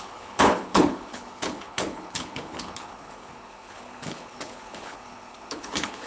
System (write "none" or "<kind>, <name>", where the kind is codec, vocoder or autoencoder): codec, HILCodec